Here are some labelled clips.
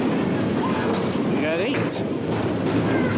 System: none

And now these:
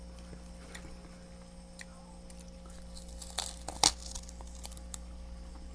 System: none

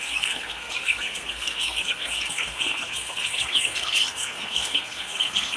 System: codec, SNAC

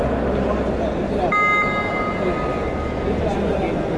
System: none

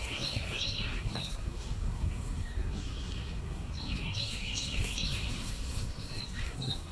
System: codec, SNAC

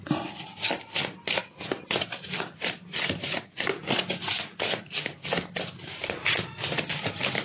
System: none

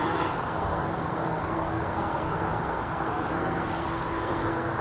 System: codec, SNAC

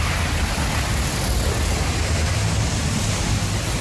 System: none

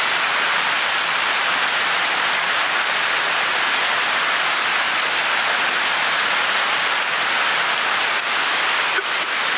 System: none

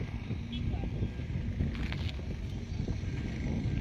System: none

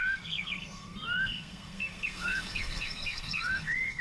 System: codec, SNAC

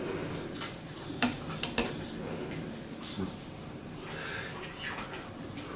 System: none